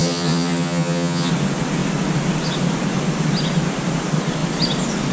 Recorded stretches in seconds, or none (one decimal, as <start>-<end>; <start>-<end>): 1.3-5.1